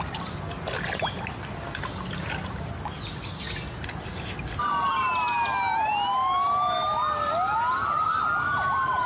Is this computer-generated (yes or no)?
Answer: no